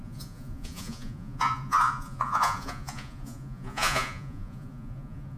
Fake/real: fake